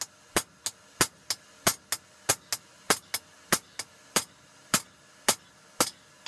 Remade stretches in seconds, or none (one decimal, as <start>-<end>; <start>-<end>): none